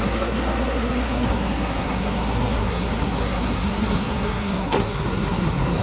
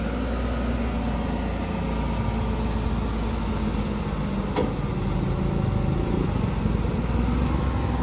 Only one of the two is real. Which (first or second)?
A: second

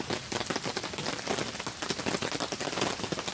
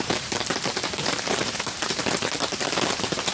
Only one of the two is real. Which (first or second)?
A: first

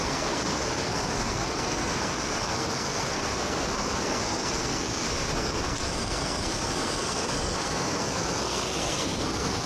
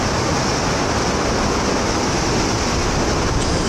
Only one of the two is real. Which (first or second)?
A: second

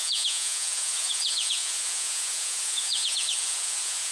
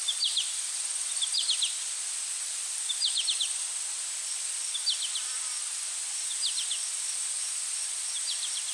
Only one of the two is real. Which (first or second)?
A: second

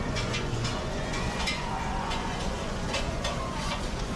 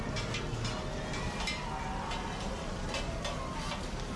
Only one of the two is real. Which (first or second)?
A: second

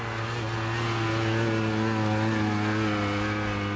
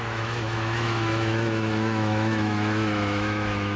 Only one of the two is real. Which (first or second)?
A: first